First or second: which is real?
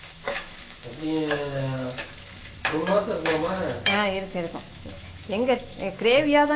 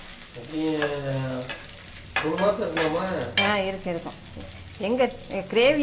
second